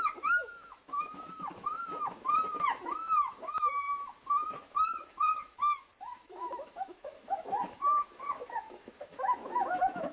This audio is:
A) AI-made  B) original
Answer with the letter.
A